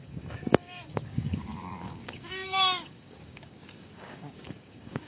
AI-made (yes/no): yes